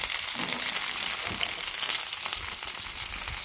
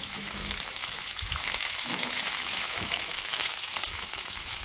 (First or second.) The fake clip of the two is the second